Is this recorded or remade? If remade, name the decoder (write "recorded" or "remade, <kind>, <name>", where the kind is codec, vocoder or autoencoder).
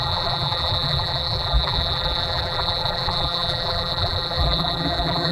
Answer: remade, vocoder, BigVGAN v2